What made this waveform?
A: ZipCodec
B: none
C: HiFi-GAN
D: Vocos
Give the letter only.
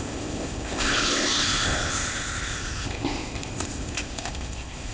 A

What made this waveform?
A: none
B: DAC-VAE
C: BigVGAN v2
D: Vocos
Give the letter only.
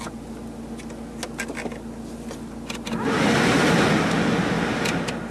A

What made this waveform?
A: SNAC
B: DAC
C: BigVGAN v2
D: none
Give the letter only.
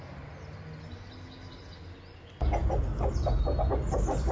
D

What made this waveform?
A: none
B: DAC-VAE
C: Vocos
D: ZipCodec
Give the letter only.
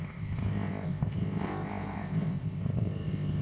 D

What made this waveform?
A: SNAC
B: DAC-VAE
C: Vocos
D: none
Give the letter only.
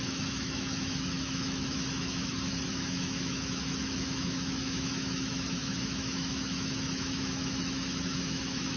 B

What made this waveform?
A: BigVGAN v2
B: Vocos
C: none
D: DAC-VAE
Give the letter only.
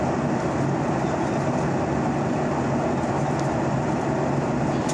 C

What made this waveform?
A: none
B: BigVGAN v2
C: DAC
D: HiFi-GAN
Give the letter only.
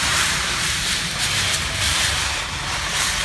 B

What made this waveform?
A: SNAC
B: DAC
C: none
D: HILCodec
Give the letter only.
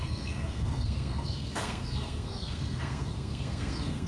A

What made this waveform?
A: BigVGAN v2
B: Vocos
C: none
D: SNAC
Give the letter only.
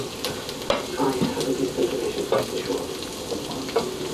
C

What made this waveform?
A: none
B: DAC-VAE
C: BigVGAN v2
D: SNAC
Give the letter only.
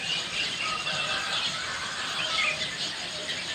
C